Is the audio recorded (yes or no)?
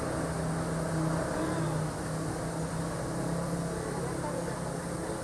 yes